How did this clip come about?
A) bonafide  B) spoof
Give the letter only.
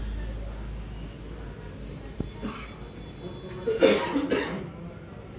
A